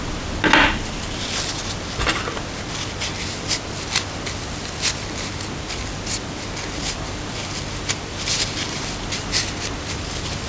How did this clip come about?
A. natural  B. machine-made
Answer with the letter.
A